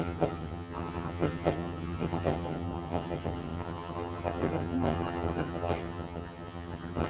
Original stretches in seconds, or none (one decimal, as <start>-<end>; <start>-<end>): none